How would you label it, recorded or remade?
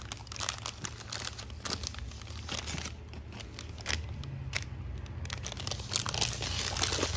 recorded